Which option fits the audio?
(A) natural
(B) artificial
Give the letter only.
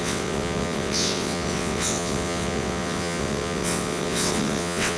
B